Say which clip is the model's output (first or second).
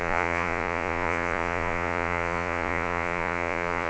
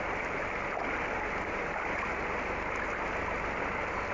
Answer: first